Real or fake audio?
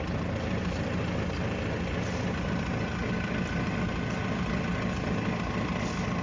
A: real